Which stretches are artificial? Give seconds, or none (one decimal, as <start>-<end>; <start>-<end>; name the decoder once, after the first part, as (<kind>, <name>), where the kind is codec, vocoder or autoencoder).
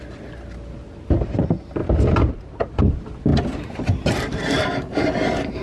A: none